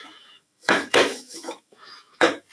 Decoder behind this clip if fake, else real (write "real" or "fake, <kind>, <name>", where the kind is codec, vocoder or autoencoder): fake, autoencoder, DAC-VAE